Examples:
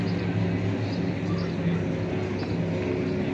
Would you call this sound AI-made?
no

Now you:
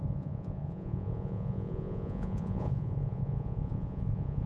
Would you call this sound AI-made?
yes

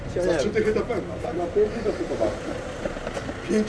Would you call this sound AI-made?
no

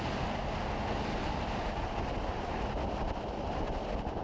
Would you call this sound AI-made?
no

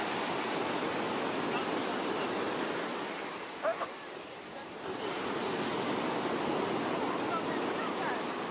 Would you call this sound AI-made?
no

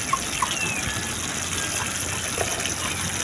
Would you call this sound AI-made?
no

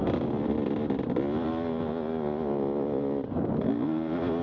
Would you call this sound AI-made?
no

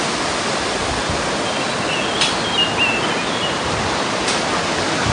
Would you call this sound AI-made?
no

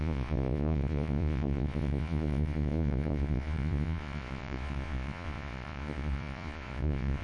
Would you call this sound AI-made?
yes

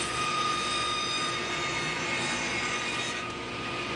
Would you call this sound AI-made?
yes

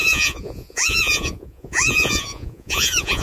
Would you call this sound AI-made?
yes